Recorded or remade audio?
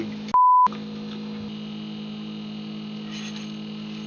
recorded